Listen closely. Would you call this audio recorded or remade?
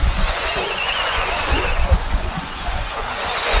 remade